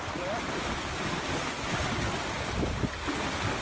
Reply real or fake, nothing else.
real